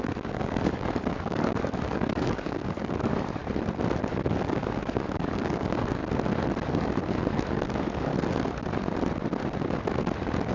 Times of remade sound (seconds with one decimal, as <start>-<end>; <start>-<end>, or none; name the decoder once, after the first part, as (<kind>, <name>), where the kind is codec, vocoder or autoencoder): 0.0-3.4 (codec, DAC); 4.1-6.0; 6.7-8.1